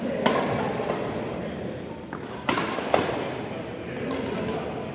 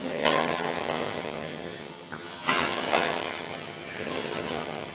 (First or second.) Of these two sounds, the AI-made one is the second